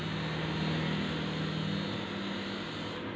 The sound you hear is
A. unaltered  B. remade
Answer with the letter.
A